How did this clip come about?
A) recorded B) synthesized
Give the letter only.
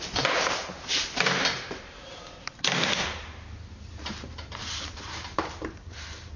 B